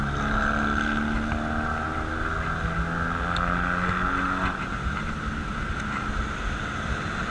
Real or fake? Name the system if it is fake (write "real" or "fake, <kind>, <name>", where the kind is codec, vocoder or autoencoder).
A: real